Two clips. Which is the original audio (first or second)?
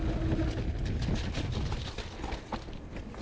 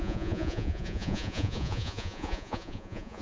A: first